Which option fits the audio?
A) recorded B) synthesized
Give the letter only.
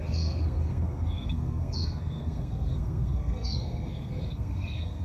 B